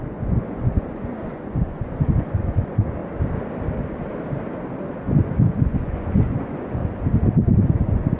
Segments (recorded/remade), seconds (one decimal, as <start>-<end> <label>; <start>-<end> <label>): 0.0-3.0 remade; 3.0-5.0 recorded; 5.0-6.8 remade; 6.8-7.7 recorded; 7.7-8.2 remade